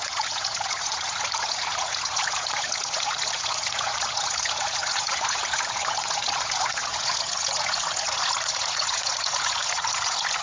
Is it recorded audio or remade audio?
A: remade